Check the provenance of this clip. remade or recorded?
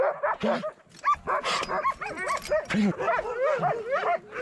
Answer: recorded